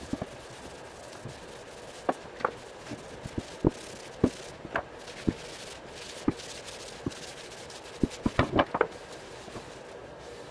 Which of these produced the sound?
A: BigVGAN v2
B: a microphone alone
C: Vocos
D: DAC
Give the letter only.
B